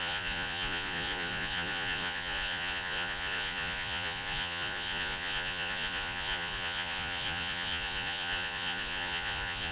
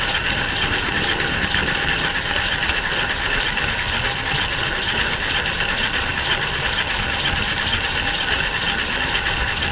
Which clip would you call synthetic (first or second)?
first